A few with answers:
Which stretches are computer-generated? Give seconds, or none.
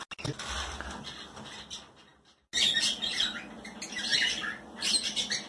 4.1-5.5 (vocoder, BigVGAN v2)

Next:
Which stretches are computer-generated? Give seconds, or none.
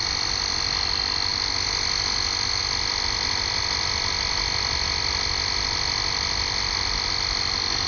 none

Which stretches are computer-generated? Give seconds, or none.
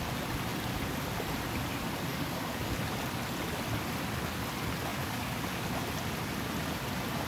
2.1-2.8 (codec, DAC); 4.9-5.6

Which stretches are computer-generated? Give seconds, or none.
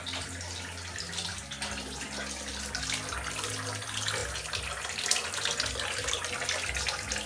none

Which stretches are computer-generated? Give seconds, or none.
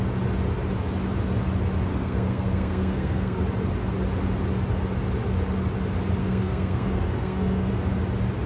1.9-3.4 (codec, SNAC); 6.2-7.7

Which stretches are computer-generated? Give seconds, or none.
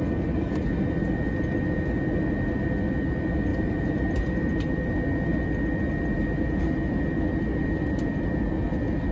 3.5-4.7 (vocoder, BigVGAN v2)